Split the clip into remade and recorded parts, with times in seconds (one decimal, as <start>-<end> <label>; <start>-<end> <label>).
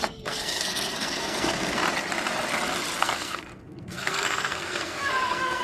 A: 0.0-1.8 remade; 1.8-3.0 recorded; 3.0-5.6 remade